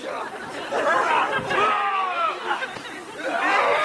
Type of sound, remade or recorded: remade